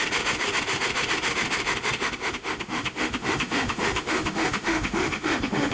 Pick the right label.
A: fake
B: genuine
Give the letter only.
A